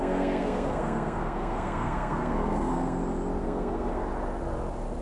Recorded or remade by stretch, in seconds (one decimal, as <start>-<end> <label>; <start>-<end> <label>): 0.0-3.0 remade; 3.0-3.4 recorded; 3.4-4.0 remade; 4.0-5.0 recorded